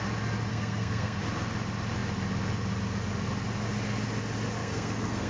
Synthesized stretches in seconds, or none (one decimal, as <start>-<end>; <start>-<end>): 0.5-1.2; 4.6-5.3